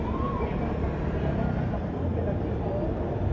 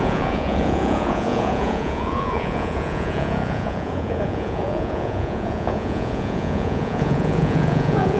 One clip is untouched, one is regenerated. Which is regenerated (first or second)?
second